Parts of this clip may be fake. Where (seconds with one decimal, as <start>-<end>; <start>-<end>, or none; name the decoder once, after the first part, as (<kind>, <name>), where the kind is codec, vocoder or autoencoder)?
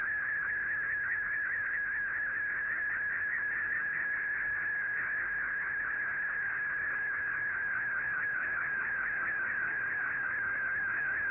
0.0-11.3 (autoencoder, DAC-VAE)